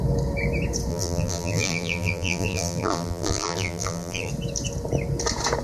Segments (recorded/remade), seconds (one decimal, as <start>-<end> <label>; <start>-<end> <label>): 0.0-0.9 recorded; 0.9-4.3 remade; 4.3-5.6 recorded